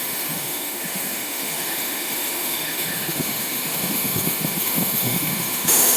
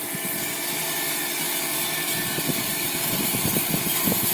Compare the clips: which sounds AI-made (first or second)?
first